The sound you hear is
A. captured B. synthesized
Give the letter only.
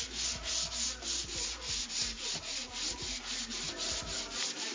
A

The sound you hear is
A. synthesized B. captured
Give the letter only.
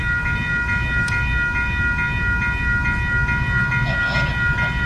B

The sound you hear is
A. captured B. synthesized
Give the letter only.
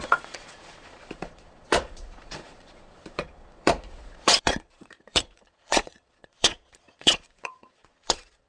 B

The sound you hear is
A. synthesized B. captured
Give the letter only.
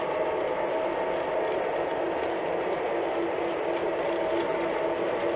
B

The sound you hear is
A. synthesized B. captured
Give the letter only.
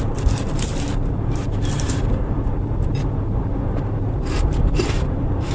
A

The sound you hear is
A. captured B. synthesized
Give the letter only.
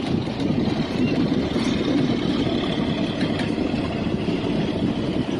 A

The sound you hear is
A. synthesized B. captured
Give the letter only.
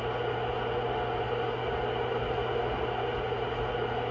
B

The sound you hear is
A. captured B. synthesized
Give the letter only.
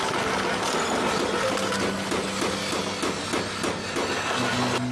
A